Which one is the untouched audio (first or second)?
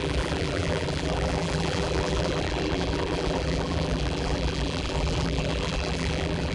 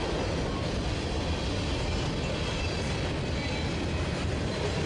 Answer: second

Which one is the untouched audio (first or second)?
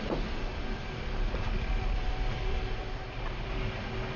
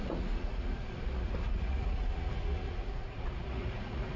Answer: first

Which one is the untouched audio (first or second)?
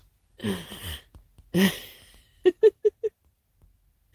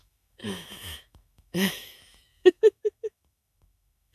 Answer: first